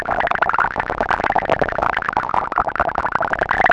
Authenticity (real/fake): real